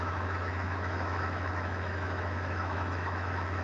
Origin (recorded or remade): remade